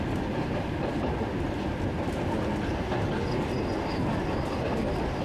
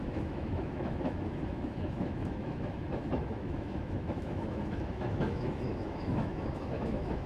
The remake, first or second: second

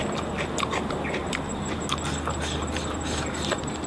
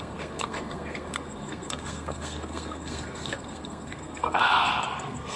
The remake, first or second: second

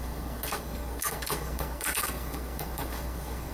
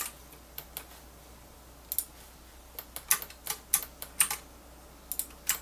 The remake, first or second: first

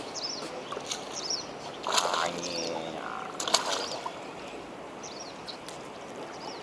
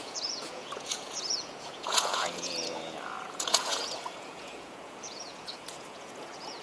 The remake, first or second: second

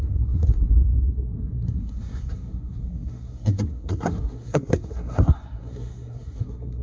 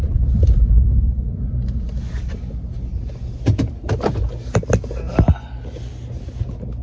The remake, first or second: first